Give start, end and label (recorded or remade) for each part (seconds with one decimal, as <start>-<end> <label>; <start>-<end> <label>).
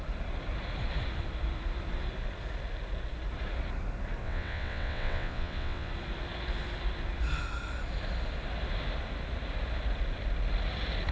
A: 0.0-4.2 recorded; 4.2-5.9 remade; 5.9-11.1 recorded